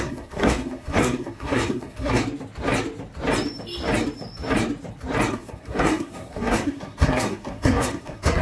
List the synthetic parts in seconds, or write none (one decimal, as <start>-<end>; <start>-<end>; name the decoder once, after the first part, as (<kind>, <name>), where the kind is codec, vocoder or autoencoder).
0.0-2.2 (codec, SNAC); 5.3-8.4